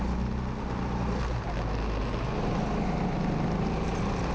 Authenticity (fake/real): real